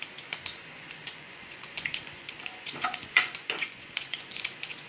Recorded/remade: remade